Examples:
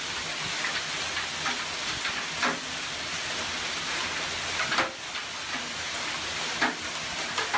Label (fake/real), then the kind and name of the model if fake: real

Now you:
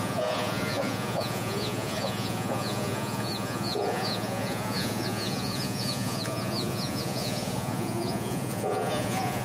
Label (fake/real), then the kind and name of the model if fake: fake, vocoder, Vocos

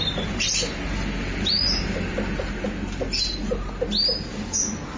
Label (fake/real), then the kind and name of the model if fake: real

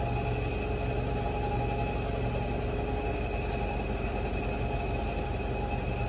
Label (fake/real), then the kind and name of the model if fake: real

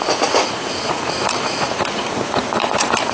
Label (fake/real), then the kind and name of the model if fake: fake, vocoder, Vocos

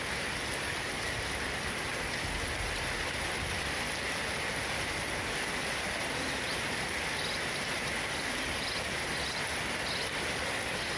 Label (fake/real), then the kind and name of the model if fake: real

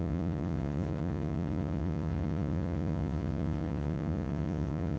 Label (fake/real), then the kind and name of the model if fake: fake, vocoder, Vocos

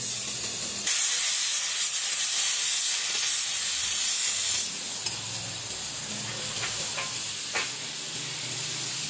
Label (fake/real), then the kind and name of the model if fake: real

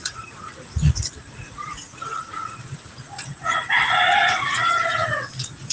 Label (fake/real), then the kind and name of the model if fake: fake, vocoder, Vocos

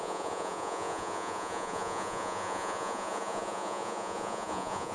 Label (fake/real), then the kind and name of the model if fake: fake, vocoder, Vocos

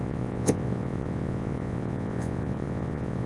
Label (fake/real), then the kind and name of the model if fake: fake, vocoder, Vocos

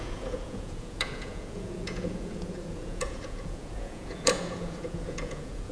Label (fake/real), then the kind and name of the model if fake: fake, vocoder, Vocos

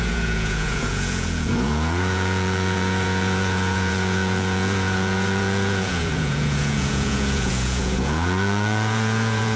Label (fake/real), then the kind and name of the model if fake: fake, vocoder, Vocos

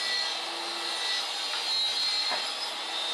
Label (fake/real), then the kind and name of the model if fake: real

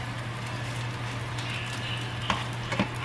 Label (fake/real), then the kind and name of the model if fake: real